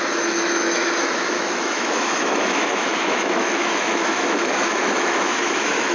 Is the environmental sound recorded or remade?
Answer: remade